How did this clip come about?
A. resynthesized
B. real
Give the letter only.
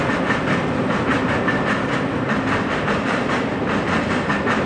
B